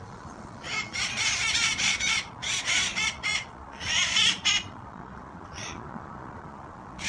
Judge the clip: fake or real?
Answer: fake